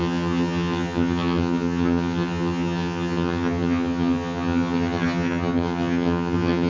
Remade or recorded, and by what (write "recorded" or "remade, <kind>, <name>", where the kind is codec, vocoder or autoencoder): remade, vocoder, HiFi-GAN